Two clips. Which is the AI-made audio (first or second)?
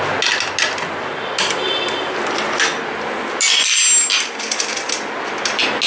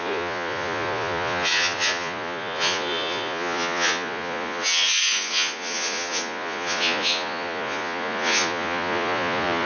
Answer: second